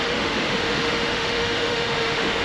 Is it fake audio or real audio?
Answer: fake